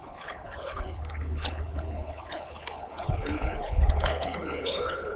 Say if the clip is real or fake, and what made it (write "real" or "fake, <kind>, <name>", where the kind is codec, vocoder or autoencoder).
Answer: fake, codec, HILCodec